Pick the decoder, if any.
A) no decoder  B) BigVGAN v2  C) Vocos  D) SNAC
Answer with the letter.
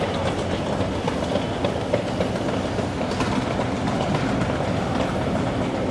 A